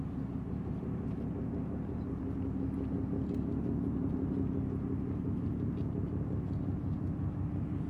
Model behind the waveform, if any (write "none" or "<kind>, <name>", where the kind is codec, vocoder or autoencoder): none